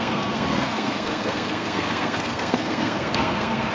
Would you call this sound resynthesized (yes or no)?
yes